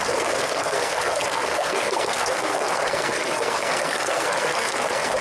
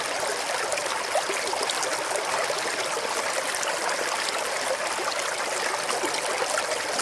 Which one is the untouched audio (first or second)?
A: second